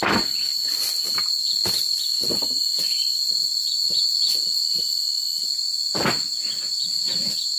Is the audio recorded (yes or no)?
yes